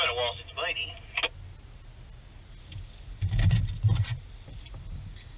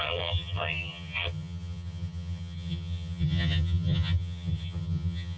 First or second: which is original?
first